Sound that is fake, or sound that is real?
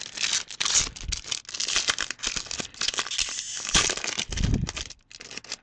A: real